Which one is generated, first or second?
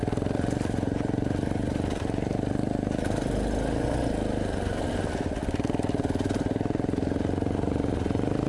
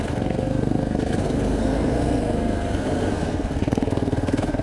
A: second